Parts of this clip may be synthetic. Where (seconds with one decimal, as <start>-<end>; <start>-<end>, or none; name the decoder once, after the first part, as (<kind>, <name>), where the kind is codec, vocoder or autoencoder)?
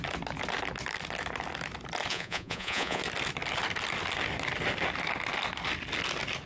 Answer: 2.1-3.0 (vocoder, Vocos)